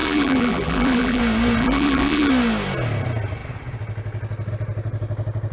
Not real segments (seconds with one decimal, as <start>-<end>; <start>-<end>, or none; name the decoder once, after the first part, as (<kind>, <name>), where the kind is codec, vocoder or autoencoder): 0.0-1.2 (vocoder, BigVGAN v2); 1.6-2.3